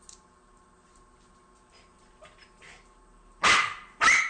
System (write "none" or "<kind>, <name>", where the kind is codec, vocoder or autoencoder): none